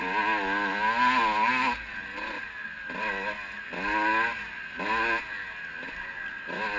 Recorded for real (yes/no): yes